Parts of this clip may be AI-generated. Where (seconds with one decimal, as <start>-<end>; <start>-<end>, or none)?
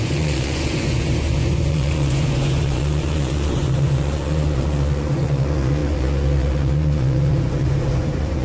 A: 0.0-8.4